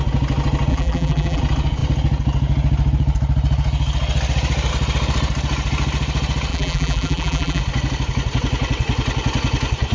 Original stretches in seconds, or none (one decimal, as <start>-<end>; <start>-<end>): 0.0-0.7; 1.4-6.5; 7.6-9.9